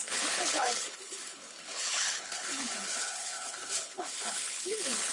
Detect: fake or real fake